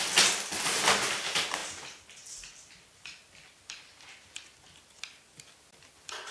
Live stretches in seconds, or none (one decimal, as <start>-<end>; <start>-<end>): 0.0-6.3